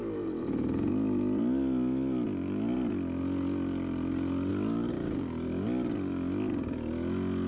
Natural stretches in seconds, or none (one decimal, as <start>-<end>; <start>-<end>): 0.0-7.5